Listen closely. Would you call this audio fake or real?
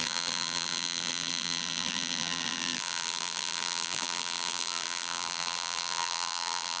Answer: fake